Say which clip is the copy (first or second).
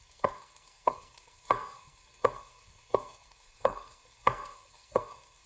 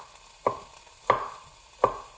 first